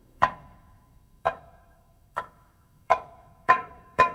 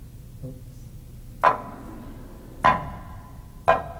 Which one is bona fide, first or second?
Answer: second